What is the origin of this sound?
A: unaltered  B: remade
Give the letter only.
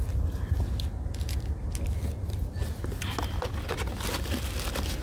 A